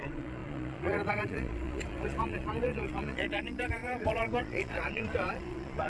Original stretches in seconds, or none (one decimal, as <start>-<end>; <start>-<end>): none